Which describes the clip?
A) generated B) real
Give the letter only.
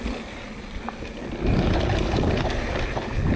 B